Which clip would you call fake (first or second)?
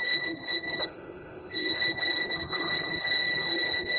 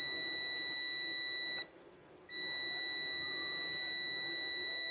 first